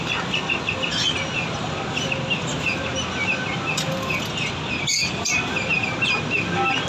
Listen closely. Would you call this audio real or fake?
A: real